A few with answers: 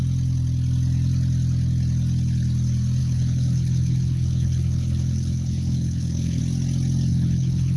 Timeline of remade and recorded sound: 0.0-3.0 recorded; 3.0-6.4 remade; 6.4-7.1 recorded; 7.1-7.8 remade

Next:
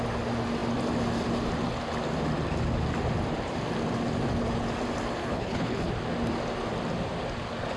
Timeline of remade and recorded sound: 0.0-5.2 recorded; 5.2-5.9 remade; 5.9-7.8 recorded

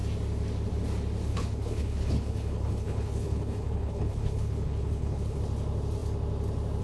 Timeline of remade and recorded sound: 0.0-1.3 recorded; 1.3-5.4 remade; 5.4-6.8 recorded

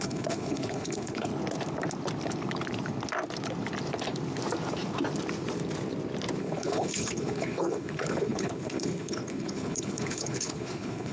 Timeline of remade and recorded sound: 0.0-1.3 remade; 1.3-6.4 recorded; 6.4-11.1 remade